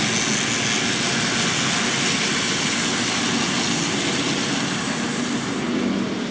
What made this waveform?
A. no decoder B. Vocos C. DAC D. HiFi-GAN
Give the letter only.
A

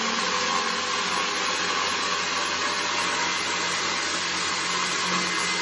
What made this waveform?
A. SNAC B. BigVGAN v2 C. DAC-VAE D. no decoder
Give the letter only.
D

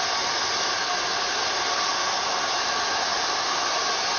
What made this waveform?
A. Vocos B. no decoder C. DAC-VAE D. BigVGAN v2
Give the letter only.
B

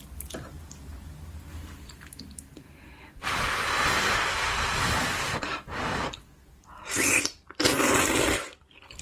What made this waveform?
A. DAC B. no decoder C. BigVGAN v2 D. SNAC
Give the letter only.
B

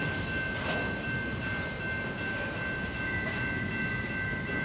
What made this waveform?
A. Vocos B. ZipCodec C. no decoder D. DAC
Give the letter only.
C